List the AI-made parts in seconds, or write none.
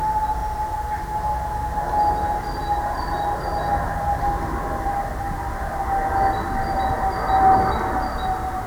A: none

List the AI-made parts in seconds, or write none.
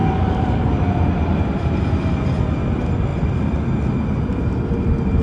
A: 0.0-0.7 (codec, DAC)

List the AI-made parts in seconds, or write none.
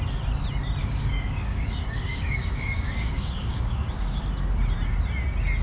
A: 0.8-4.2 (codec, DAC)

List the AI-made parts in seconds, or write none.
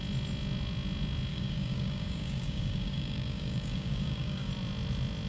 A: 1.3-4.5 (codec, DAC)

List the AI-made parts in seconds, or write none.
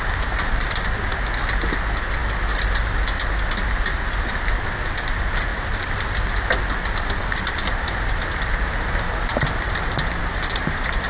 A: none